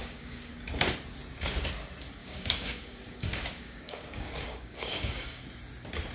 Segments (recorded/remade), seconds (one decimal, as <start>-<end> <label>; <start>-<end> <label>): 0.0-0.5 remade; 0.5-2.2 recorded; 2.2-5.4 remade; 5.4-6.1 recorded